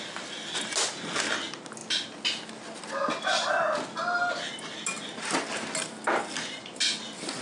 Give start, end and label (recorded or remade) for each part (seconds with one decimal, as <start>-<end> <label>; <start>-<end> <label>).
0.0-7.4 recorded